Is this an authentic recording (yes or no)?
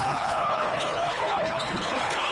no